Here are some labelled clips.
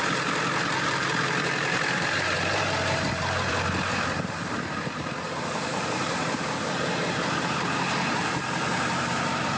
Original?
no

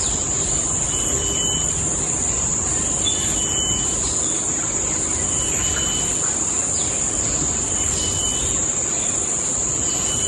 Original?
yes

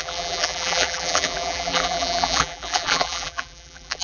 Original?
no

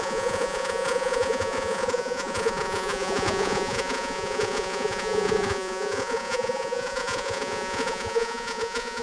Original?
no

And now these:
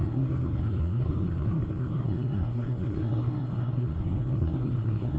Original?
no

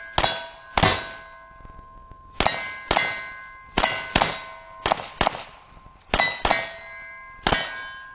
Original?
yes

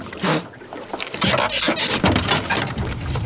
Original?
yes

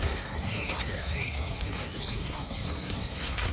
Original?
no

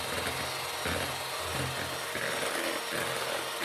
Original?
yes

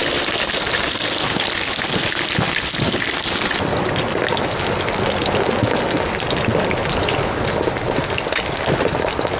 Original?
yes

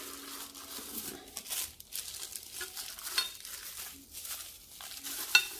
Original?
yes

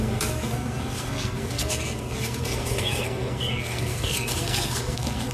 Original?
no